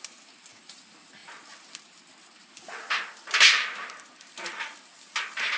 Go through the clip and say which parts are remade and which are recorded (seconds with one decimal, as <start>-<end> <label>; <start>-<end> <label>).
0.0-5.6 recorded